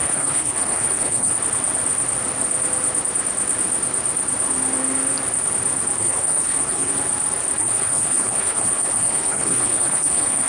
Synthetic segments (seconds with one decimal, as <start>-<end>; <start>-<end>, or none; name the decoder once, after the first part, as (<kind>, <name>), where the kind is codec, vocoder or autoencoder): 0.0-1.3 (codec, HILCodec); 6.0-6.9; 7.6-10.5